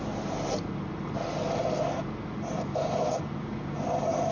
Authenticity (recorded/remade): recorded